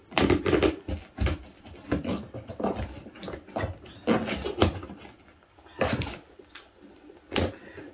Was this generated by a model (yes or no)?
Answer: no